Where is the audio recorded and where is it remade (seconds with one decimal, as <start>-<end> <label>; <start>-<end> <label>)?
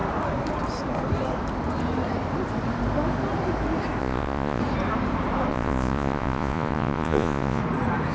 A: 0.0-4.0 recorded; 4.0-4.6 remade; 4.6-5.5 recorded; 5.5-7.6 remade; 7.6-8.1 recorded